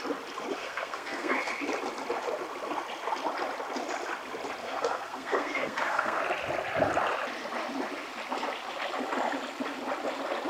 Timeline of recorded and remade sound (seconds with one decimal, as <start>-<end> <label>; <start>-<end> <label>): 0.0-0.6 recorded; 0.6-1.6 remade; 1.6-4.6 recorded; 4.6-6.2 remade; 6.2-10.5 recorded